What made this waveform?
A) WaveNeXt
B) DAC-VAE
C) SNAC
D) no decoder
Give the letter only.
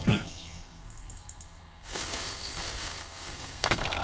C